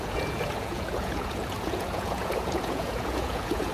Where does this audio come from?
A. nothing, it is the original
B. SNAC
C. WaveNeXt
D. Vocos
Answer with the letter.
D